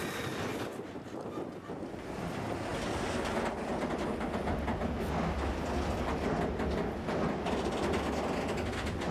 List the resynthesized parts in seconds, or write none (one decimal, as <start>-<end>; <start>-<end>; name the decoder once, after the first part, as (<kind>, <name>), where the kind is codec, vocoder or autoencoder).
none